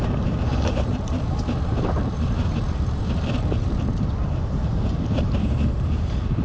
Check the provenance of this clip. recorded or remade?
remade